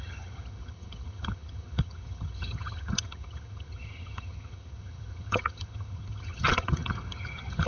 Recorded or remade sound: remade